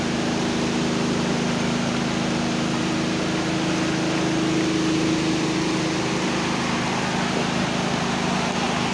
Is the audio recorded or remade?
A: recorded